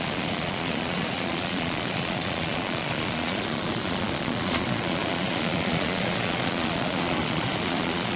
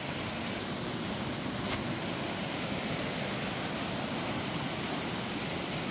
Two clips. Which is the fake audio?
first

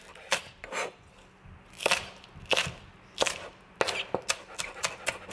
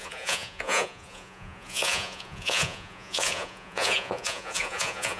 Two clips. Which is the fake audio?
second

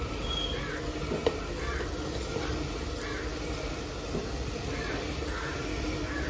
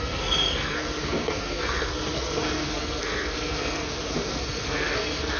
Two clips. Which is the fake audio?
second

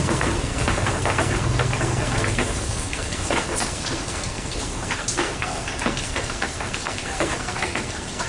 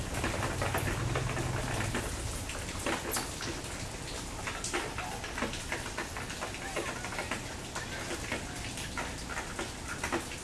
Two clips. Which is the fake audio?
first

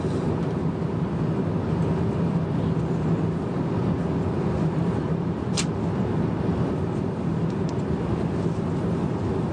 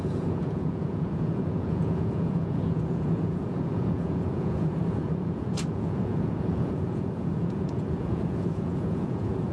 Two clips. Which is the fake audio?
second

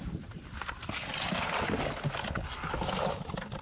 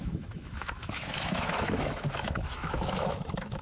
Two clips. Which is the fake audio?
second